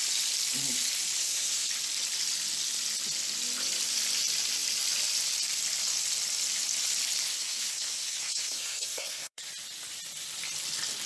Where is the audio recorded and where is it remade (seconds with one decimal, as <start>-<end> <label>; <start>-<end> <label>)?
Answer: 0.0-1.2 recorded; 1.2-1.7 remade; 1.7-7.3 recorded; 7.3-9.4 remade; 9.4-11.1 recorded